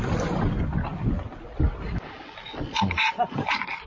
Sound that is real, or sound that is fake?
real